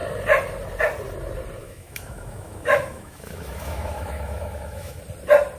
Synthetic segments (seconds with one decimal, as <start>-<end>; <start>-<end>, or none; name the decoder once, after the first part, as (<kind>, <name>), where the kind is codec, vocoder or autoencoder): 1.6-5.0 (autoencoder, DAC-VAE)